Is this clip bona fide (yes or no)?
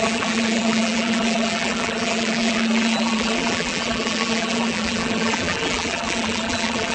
no